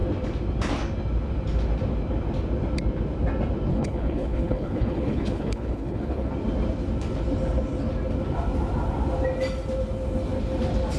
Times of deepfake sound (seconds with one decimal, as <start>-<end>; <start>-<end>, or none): 3.7-6.3